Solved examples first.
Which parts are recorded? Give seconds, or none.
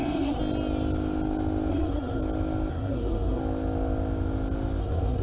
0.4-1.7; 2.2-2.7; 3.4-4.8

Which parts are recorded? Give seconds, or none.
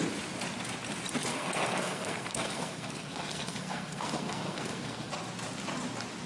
0.0-1.3; 5.1-6.3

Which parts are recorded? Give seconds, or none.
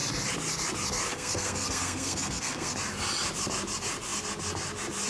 0.0-1.1; 2.7-5.1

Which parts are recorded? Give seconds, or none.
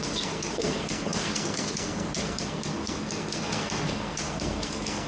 none